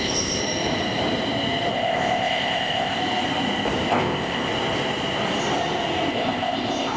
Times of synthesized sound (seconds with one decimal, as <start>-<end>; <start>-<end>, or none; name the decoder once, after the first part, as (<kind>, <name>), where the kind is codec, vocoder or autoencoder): 0.0-0.4 (codec, ZipCodec); 1.7-3.0; 3.9-4.5; 6.1-7.0